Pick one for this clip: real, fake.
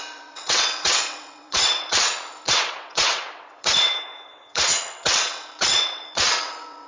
fake